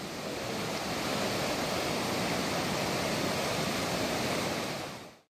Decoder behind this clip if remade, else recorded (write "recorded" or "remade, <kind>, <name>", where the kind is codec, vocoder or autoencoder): recorded